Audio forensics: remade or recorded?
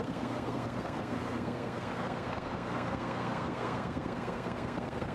remade